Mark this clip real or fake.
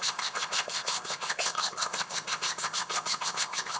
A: fake